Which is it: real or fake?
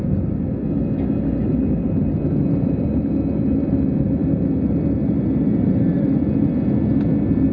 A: real